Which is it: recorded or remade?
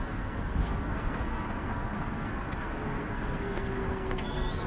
remade